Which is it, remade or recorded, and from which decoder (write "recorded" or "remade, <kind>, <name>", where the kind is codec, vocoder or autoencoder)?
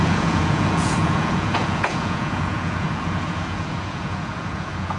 remade, vocoder, Vocos